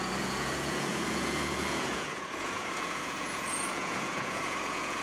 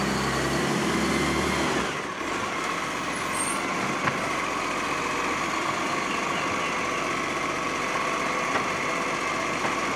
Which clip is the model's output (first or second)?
first